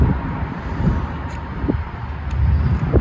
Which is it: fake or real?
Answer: real